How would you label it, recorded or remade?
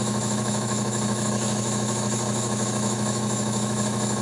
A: remade